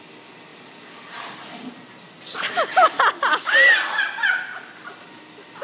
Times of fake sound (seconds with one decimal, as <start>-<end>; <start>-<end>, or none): none